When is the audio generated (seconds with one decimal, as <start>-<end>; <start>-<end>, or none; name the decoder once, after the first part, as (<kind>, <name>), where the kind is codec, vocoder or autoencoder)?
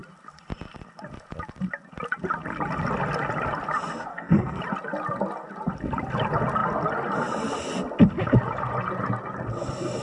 4.1-4.6 (codec, SNAC)